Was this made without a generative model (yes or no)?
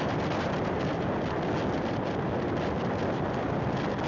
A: yes